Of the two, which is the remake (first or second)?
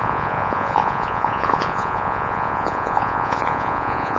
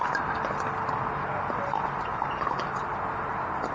first